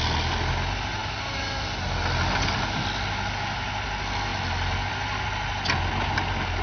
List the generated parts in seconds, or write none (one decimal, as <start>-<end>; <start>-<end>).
none